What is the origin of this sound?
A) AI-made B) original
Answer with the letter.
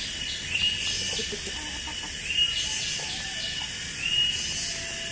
B